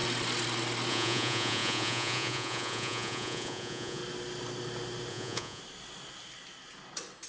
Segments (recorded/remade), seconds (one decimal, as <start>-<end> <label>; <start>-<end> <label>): 0.0-0.9 recorded; 0.9-4.0 remade; 4.0-5.1 recorded; 5.1-5.6 remade; 5.6-7.3 recorded